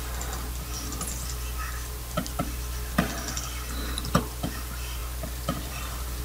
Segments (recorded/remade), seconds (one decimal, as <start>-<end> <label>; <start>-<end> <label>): 0.0-6.2 recorded